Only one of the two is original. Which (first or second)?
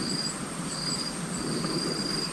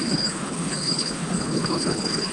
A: first